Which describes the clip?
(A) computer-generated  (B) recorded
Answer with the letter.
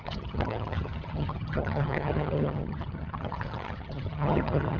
A